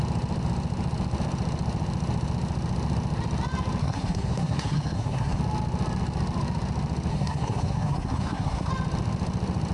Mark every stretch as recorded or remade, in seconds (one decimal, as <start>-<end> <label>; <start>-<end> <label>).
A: 0.0-3.8 recorded; 3.8-5.4 remade; 5.4-7.1 recorded; 7.1-8.7 remade; 8.7-9.7 recorded